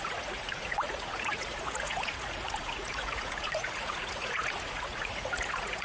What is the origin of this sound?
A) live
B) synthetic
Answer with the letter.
B